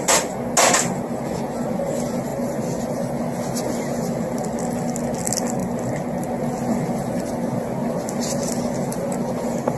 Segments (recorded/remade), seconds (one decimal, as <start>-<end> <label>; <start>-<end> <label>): 0.0-9.8 recorded

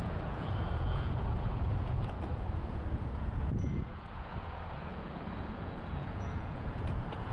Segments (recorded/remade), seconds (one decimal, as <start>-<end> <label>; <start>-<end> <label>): 0.0-7.3 remade